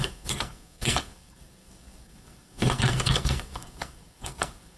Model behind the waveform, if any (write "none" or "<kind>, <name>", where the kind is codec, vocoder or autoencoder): codec, SNAC